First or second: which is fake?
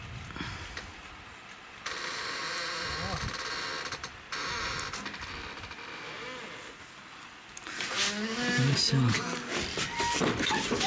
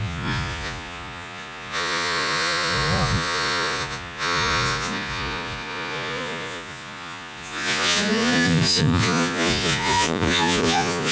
second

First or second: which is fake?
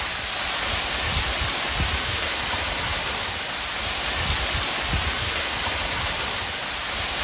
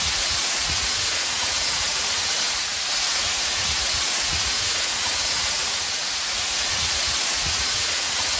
second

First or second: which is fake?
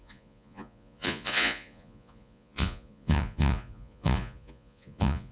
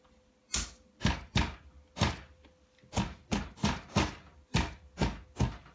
first